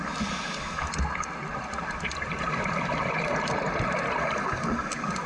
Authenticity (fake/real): real